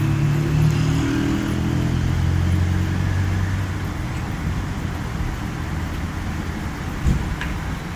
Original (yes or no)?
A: yes